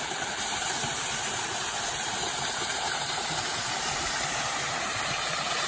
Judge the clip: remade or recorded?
remade